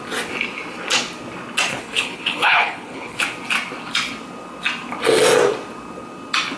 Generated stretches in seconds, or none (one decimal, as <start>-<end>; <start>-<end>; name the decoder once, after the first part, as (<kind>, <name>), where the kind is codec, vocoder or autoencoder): 1.7-3.2 (codec, HILCodec)